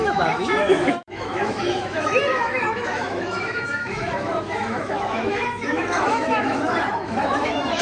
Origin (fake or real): fake